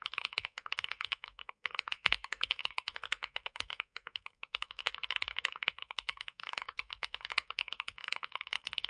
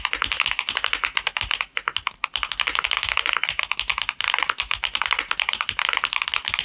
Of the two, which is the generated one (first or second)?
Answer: first